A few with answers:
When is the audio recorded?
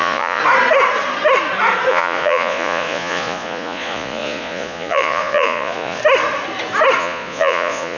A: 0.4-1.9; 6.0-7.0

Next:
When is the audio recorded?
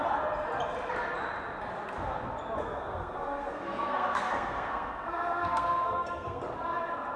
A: 0.0-2.6; 6.4-7.2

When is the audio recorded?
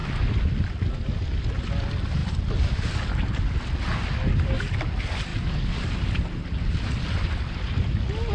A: 0.0-8.3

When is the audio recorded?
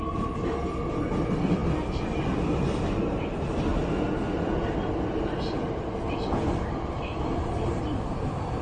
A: 0.0-8.6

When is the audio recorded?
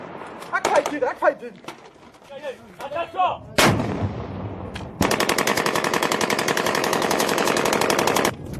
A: 0.0-5.5; 7.7-8.6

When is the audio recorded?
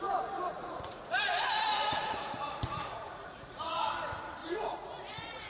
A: 0.0-0.6; 3.9-4.4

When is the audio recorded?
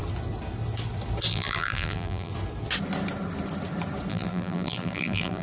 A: 0.0-1.3; 2.3-4.1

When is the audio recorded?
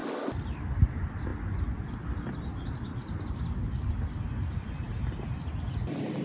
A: 0.0-6.2